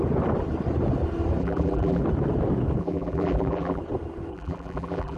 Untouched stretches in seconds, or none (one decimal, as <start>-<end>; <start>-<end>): 0.0-1.4; 2.0-2.8; 3.8-4.3